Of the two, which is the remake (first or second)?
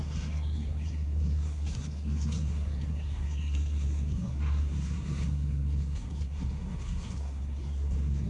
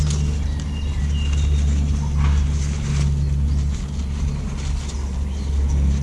first